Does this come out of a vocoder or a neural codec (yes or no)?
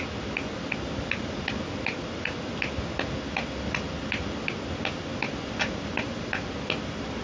no